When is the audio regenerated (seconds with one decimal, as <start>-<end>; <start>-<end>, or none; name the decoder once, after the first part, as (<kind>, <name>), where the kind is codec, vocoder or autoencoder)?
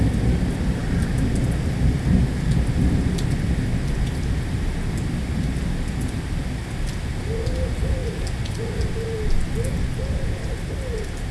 none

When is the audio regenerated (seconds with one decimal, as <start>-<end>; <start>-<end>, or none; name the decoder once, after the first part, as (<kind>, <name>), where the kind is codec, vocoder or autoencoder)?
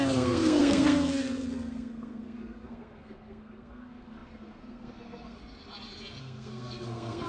0.0-5.4 (codec, SNAC); 6.2-7.3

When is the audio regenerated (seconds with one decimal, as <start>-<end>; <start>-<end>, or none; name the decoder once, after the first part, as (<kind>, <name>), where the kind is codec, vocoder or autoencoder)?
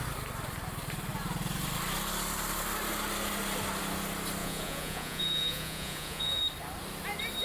4.4-6.4 (vocoder, Vocos)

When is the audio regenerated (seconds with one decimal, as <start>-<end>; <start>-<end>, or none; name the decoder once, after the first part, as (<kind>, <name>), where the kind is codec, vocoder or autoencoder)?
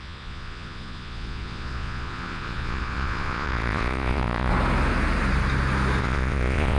0.0-4.5 (vocoder, Vocos); 6.0-6.8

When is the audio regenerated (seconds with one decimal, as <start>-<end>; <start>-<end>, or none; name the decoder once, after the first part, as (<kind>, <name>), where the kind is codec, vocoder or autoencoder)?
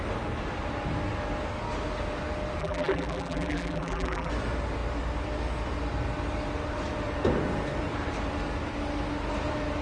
2.6-4.3 (vocoder, BigVGAN v2)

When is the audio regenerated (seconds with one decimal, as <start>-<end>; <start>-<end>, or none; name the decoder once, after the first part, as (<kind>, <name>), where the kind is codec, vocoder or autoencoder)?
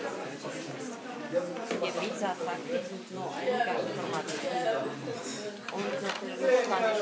2.6-4.4 (vocoder, BigVGAN v2)